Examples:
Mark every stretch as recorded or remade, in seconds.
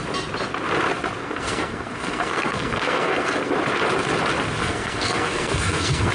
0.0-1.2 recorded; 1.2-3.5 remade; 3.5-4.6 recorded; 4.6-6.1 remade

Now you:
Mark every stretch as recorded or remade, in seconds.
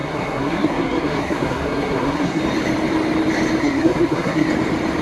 0.0-2.4 remade; 2.4-3.6 recorded; 3.6-4.5 remade; 4.5-5.0 recorded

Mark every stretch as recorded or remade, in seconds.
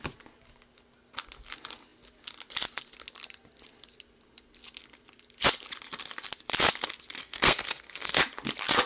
0.0-7.2 recorded; 7.2-8.2 remade; 8.2-8.9 recorded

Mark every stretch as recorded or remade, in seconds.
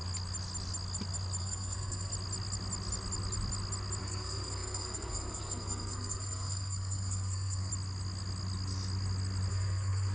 0.0-1.4 recorded; 1.4-2.1 remade; 2.1-4.0 recorded; 4.0-7.7 remade; 7.7-9.5 recorded; 9.5-10.1 remade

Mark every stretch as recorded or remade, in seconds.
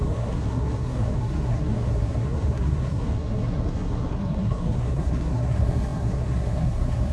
0.0-7.1 remade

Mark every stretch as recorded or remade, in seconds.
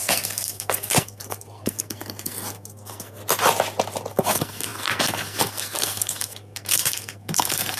0.0-3.2 remade; 3.2-4.1 recorded; 4.1-7.8 remade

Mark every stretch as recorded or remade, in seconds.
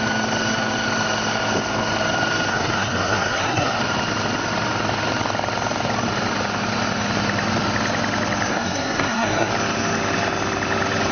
0.0-2.5 recorded; 2.5-3.8 remade; 3.8-8.5 recorded; 8.5-9.5 remade; 9.5-11.1 recorded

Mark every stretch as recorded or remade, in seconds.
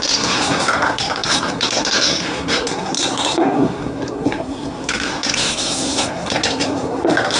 0.0-7.4 remade